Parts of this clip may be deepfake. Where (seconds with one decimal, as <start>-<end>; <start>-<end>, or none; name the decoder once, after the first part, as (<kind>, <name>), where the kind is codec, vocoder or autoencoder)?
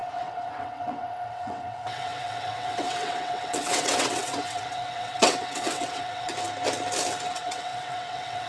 0.0-6.3 (vocoder, WaveNeXt); 7.3-8.5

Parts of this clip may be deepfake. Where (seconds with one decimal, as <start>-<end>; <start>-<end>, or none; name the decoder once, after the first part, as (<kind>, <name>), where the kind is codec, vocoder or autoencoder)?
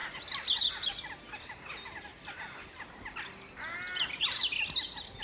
none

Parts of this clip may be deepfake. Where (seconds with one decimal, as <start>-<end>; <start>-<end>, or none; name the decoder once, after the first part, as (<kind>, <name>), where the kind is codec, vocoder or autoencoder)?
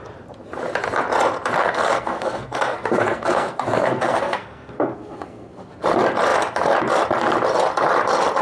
1.6-5.8 (codec, SNAC)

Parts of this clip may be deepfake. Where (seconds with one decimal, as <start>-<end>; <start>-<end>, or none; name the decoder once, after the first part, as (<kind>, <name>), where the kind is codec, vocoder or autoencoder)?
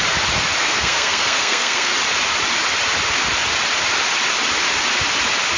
0.6-1.9 (codec, SNAC)